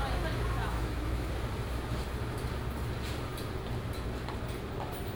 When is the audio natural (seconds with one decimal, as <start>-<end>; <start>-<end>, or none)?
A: 0.0-0.6; 1.3-5.1